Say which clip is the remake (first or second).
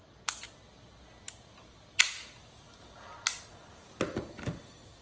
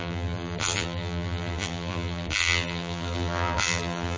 second